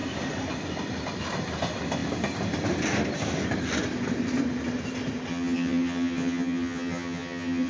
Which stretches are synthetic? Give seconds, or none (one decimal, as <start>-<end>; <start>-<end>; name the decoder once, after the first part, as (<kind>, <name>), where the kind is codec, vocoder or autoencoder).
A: 5.3-7.7 (vocoder, HiFi-GAN)